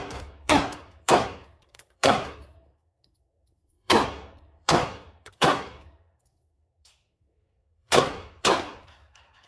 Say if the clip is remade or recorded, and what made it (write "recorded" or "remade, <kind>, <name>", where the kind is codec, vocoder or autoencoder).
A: remade, codec, SNAC